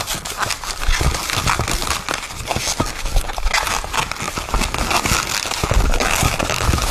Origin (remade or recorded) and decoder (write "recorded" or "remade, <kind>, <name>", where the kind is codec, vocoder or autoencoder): recorded